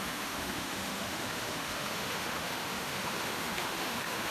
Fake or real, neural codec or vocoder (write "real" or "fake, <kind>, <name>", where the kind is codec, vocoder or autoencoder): fake, autoencoder, DAC-VAE